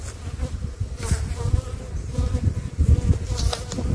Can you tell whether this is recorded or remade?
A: recorded